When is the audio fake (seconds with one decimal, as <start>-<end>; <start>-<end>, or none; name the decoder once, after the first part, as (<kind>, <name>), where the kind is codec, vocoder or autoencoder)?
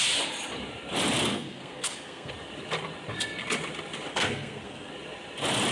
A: 1.3-2.3 (codec, SNAC); 4.1-4.9